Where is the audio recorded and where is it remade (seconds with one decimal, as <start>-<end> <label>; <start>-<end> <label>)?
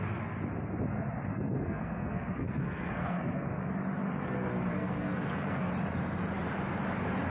0.0-1.3 recorded; 1.3-3.7 remade; 3.7-4.7 recorded; 4.7-5.7 remade; 5.7-7.3 recorded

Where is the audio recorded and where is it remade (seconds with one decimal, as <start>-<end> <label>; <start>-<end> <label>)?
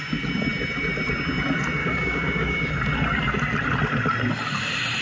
0.0-1.8 recorded; 1.8-2.7 remade; 2.7-5.0 recorded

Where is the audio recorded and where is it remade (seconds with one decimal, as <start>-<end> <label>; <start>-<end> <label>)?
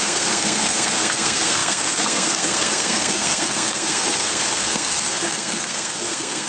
0.0-6.5 remade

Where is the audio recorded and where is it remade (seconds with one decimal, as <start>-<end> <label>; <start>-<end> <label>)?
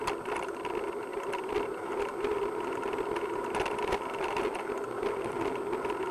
0.0-6.1 recorded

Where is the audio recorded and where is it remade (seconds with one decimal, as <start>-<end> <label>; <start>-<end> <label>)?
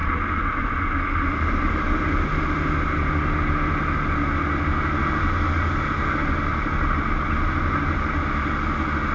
0.0-9.1 recorded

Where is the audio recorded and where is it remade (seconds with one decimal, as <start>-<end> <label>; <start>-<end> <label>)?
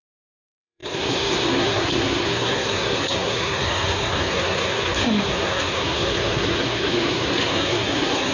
0.0-8.3 remade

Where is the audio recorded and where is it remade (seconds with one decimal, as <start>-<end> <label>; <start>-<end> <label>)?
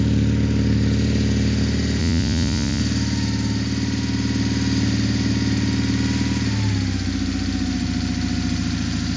0.0-2.0 recorded; 2.0-2.8 remade; 2.8-9.2 recorded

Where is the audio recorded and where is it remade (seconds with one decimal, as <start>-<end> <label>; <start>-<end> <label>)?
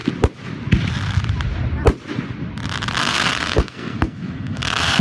0.0-3.0 recorded; 3.0-5.0 remade